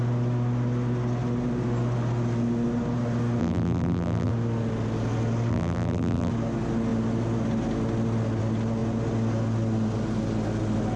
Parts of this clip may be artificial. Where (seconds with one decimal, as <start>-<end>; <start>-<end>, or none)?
3.4-4.3; 5.5-6.3